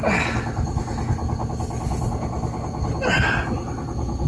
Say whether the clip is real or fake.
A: real